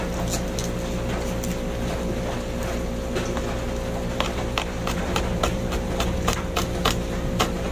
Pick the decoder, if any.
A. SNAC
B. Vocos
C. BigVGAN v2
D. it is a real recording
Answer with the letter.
D